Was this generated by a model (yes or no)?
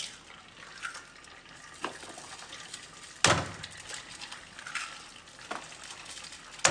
no